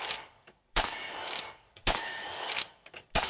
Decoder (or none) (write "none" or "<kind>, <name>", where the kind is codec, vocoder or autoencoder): codec, DAC